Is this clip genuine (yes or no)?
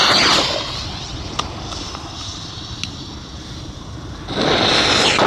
yes